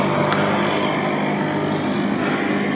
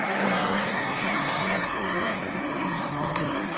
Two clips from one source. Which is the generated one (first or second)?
second